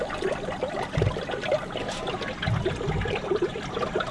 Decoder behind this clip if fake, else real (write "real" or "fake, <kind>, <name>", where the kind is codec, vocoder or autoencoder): real